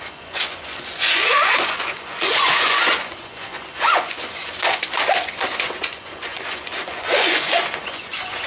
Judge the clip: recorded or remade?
remade